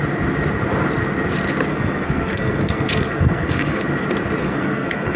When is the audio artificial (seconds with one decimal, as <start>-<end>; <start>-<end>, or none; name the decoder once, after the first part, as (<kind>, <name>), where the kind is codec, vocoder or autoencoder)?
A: 1.7-3.8 (codec, SNAC); 4.4-5.2